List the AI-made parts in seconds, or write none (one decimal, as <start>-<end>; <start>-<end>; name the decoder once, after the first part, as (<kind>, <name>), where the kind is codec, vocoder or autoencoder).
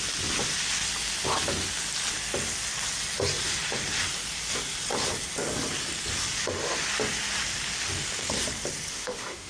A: 8.9-9.5 (autoencoder, DAC-VAE)